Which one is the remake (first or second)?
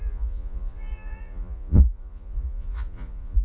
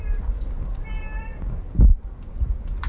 first